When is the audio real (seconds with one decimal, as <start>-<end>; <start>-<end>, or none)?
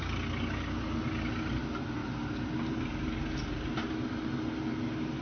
0.0-5.2